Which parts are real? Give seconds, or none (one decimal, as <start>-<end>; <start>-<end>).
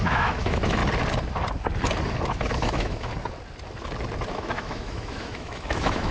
0.8-2.2; 3.1-4.3